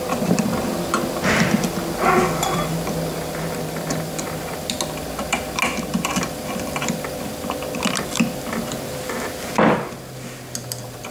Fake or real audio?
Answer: real